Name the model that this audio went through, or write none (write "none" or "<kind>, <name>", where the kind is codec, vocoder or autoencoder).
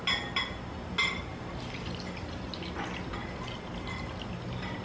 none